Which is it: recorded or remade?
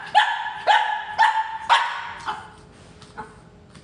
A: recorded